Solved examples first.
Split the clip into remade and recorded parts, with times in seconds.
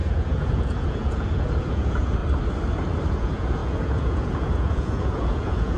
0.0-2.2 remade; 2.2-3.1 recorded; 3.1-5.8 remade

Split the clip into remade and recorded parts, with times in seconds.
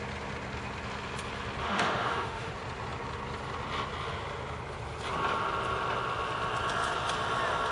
0.0-1.6 recorded; 1.6-2.5 remade; 2.5-7.7 recorded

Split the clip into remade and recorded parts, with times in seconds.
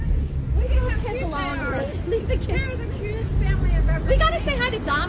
0.0-5.1 recorded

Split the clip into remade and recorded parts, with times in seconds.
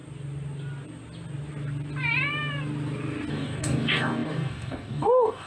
0.0-3.3 recorded; 3.3-5.5 remade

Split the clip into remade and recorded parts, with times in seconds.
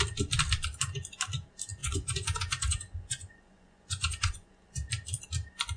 0.0-1.8 recorded; 1.8-4.9 remade; 4.9-5.8 recorded